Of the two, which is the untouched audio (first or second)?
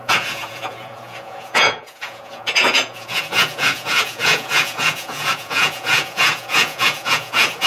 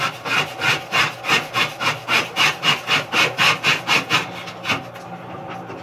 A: second